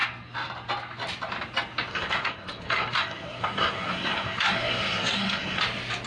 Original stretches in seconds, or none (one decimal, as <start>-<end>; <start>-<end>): 0.0-1.9; 5.6-6.1